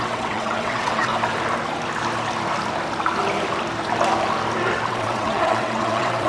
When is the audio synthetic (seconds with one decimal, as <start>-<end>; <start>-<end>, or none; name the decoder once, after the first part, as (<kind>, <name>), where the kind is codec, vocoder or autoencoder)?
0.0-1.1 (vocoder, WaveNeXt); 4.9-6.3